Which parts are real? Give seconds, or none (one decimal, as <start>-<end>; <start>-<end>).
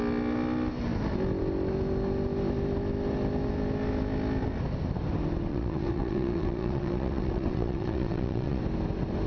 0.0-5.5; 8.6-9.3